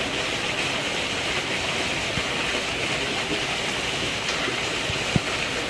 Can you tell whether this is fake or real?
real